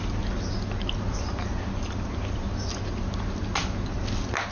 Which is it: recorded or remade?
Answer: recorded